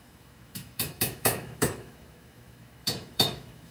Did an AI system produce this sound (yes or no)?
yes